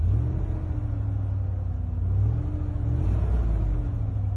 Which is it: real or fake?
real